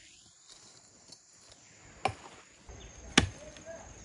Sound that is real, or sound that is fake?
real